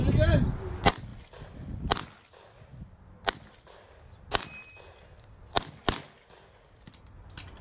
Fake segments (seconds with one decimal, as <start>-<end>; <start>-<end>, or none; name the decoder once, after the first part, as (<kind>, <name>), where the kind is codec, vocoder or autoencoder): none